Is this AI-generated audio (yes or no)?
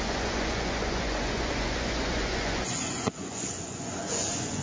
yes